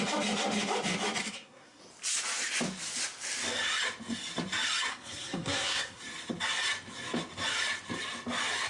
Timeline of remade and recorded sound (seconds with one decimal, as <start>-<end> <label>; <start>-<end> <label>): 0.0-1.2 recorded; 1.2-1.8 remade; 1.8-4.9 recorded; 4.9-6.0 remade; 6.0-8.7 recorded